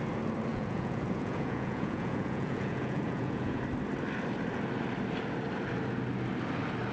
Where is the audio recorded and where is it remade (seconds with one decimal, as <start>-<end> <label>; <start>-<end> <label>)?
0.0-0.5 recorded; 0.5-3.6 remade; 3.6-6.9 recorded